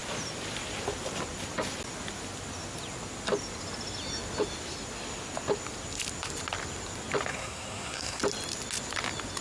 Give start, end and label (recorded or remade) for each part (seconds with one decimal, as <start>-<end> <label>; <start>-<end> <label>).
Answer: 0.0-7.3 recorded; 7.3-8.2 remade; 8.2-9.4 recorded